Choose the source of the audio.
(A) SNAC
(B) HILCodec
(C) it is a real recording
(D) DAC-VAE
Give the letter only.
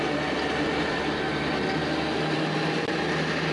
C